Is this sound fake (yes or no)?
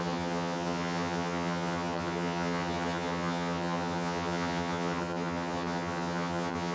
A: yes